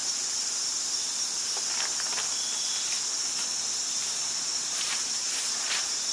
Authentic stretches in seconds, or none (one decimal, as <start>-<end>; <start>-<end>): 0.0-4.5